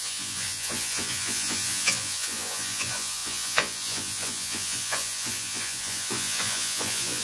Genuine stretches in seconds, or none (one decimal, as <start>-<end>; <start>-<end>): none